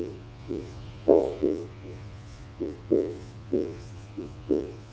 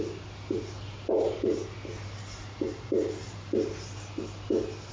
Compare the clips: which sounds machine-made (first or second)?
first